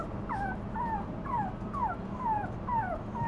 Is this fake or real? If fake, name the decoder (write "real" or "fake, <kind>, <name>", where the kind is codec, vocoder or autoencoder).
real